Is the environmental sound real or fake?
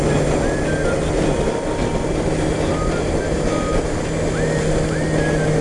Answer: real